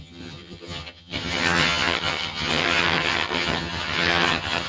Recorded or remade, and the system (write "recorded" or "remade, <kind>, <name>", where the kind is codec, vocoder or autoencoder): remade, vocoder, HiFi-GAN